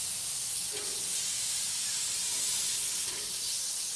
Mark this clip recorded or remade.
recorded